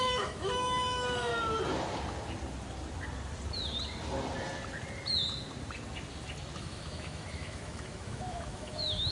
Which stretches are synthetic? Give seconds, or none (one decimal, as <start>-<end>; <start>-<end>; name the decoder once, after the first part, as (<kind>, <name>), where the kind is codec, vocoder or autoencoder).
0.0-1.3 (autoencoder, DAC-VAE); 6.6-9.1